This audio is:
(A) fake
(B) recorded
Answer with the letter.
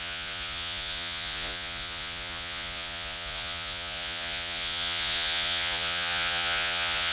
A